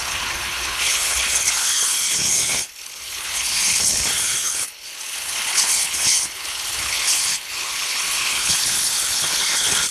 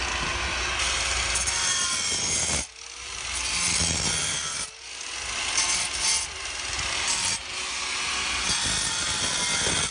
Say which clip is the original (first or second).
second